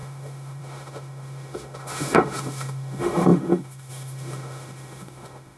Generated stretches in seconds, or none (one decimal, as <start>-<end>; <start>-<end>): 0.0-5.6